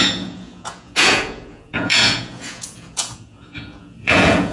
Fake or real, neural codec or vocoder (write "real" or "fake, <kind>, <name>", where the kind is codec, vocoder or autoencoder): fake, vocoder, Vocos